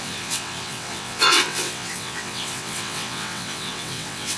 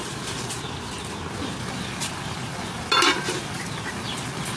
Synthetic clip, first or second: first